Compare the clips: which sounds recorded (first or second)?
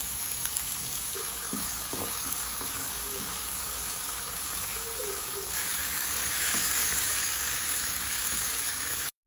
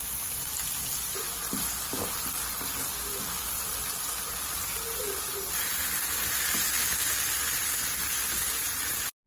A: second